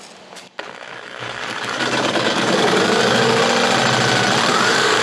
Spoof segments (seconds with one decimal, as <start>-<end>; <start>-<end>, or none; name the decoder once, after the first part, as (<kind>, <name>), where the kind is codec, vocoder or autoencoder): 0.4-3.4 (codec, DAC); 4.5-5.0